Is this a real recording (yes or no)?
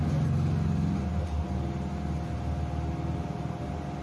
yes